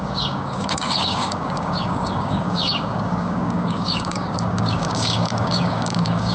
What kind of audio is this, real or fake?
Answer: fake